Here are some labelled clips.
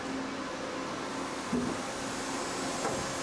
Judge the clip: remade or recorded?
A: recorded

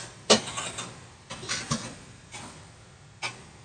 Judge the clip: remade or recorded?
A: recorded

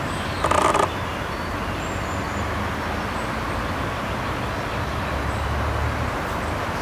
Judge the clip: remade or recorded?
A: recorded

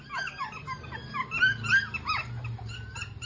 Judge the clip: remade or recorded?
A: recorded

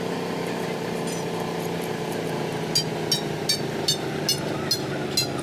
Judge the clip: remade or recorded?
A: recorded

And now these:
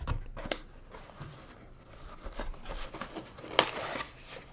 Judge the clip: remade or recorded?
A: recorded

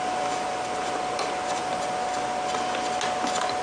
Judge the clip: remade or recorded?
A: recorded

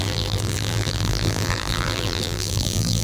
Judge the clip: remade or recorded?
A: remade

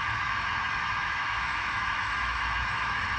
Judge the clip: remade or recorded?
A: remade